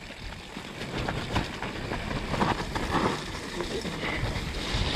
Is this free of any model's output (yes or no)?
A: yes